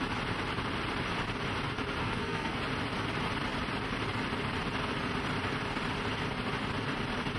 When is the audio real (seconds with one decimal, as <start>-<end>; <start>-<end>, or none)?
0.0-2.0; 2.6-7.4